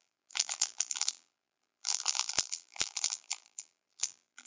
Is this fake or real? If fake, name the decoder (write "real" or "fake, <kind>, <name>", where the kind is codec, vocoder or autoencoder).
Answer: fake, vocoder, BigVGAN v2